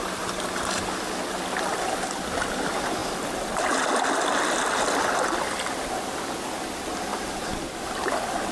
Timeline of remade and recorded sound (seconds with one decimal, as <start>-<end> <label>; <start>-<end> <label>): 0.0-7.1 recorded; 7.1-8.1 remade; 8.1-8.5 recorded